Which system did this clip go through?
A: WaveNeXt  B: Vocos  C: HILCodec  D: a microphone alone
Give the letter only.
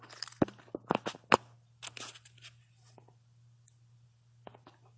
D